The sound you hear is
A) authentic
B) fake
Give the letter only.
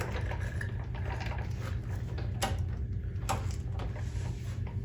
A